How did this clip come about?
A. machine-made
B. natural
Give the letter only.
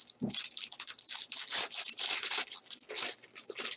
A